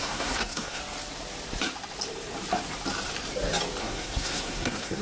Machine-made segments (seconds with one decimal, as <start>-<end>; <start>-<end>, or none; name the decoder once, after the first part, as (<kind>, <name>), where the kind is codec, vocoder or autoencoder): 0.0-0.8 (codec, SNAC); 3.8-5.0